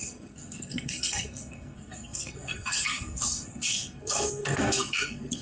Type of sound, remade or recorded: remade